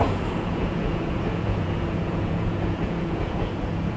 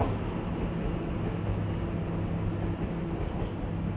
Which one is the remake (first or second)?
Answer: first